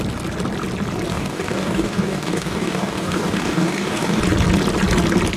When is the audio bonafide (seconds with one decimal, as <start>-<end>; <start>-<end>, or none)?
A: 0.0-1.1; 4.2-5.4